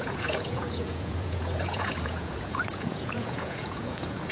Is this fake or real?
fake